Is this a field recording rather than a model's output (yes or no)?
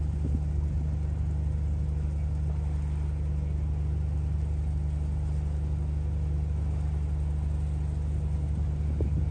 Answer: yes